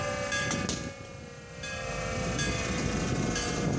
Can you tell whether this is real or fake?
real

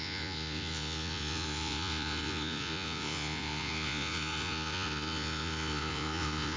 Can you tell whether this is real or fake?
fake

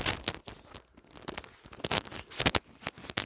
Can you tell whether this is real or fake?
real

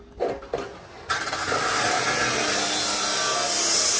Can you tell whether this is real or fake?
real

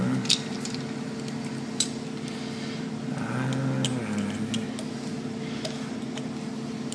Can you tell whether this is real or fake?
real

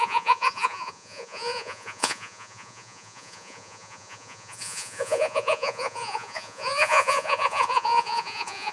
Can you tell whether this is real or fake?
fake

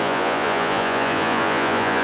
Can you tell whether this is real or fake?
fake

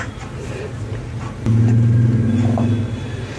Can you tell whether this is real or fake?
real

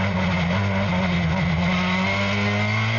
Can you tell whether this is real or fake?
real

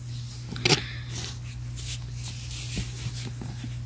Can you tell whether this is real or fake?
real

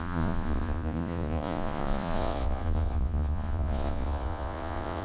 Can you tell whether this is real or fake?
fake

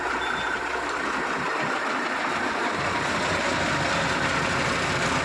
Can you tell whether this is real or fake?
real